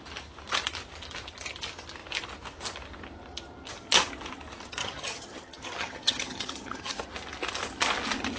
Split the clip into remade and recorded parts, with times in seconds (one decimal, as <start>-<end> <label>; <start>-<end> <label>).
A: 0.0-4.8 recorded; 4.8-6.9 remade; 6.9-8.4 recorded